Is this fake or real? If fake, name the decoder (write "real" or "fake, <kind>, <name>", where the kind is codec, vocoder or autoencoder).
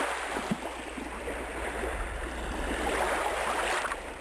real